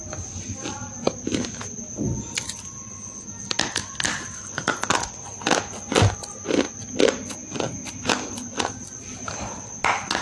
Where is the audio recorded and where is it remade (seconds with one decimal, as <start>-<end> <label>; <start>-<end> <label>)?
0.0-10.2 recorded